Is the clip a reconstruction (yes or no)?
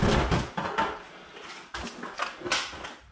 no